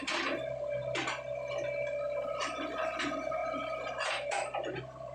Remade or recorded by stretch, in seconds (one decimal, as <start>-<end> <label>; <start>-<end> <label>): 0.0-5.1 remade